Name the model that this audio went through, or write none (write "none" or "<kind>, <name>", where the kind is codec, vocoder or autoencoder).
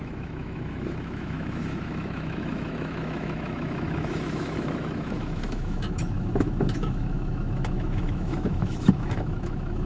autoencoder, DAC-VAE